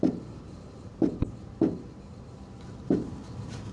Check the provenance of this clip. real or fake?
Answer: fake